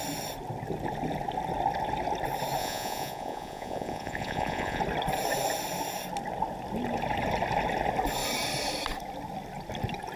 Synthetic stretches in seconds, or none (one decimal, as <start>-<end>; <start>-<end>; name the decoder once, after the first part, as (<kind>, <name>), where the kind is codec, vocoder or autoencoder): 2.6-4.8 (vocoder, Vocos)

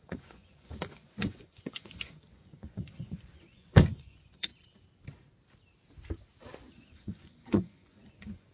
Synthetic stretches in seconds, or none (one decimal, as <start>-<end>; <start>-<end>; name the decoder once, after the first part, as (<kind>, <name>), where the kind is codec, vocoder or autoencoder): 0.0-4.5 (vocoder, Vocos); 6.7-8.5

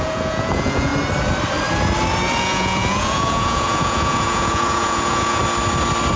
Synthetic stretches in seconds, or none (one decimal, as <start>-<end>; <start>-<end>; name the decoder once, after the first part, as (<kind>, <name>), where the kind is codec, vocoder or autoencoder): 0.0-0.9 (vocoder, Vocos); 2.4-5.4

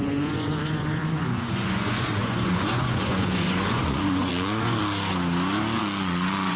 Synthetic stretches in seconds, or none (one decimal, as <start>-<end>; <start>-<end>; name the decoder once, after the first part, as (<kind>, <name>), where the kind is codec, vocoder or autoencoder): 0.0-4.8 (vocoder, Vocos); 5.8-6.6

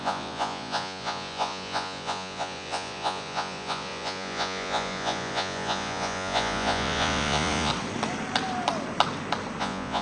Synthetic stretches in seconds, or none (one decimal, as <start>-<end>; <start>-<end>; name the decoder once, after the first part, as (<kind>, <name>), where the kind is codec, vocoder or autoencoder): 0.0-7.7 (vocoder, Vocos); 9.6-10.0

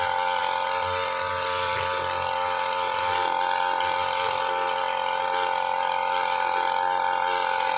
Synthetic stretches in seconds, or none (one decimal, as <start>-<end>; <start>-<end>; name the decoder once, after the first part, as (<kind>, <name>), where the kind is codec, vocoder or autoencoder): none

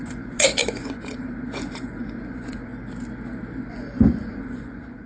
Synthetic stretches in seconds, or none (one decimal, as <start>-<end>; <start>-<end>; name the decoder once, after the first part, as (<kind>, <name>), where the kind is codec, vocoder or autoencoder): 0.0-2.7 (vocoder, Vocos); 3.7-5.1